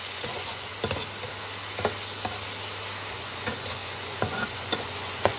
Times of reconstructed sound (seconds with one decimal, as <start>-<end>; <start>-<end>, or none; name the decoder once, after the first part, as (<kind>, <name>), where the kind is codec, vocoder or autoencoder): 0.0-0.7 (vocoder, Vocos); 3.1-5.4